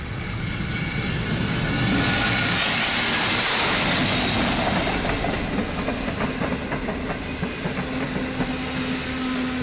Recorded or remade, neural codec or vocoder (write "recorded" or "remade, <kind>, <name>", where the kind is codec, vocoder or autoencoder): recorded